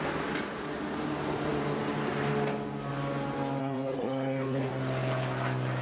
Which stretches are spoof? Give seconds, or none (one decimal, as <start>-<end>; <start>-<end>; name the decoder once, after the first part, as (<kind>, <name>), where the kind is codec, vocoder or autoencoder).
3.6-4.7 (codec, SNAC)